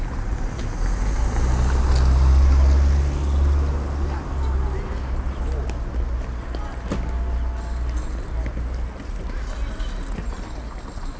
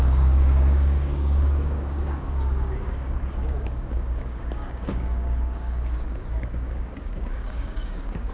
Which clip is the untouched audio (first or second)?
first